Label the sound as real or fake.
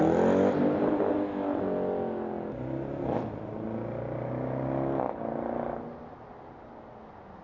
real